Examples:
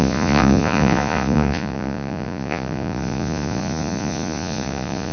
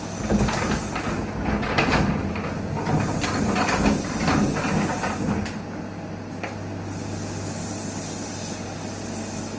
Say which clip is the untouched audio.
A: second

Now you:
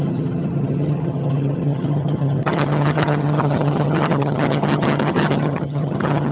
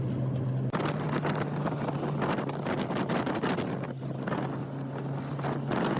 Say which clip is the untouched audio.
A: second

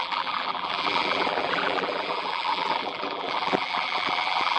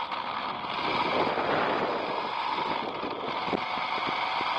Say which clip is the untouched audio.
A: second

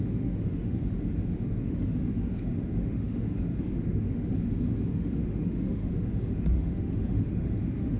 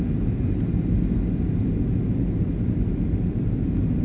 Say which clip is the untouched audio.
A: second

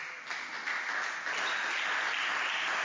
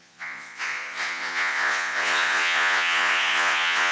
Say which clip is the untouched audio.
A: first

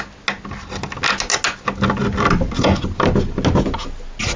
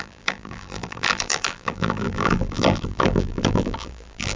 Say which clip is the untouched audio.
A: first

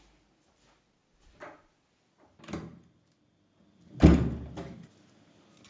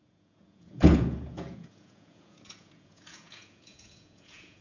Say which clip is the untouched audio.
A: first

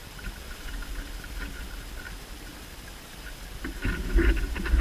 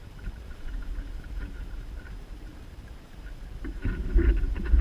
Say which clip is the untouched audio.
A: first